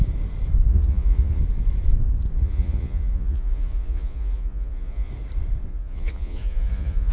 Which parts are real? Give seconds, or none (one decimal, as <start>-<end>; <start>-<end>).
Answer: 0.0-0.7; 1.4-2.4; 5.1-5.7